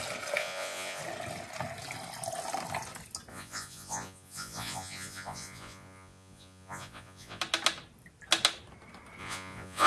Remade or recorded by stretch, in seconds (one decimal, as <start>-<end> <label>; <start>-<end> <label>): 0.0-0.4 recorded; 0.4-1.0 remade; 1.0-3.3 recorded; 3.3-7.4 remade; 7.4-9.2 recorded; 9.2-9.9 remade